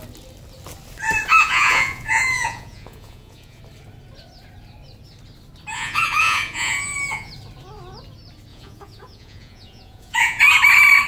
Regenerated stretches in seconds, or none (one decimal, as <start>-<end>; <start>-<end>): 1.3-3.6; 5.7-7.3; 8.5-10.4